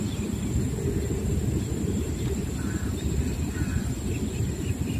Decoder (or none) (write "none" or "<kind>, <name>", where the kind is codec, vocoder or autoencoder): none